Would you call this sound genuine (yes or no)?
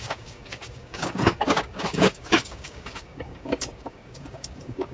no